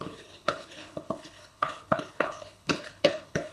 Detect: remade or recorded remade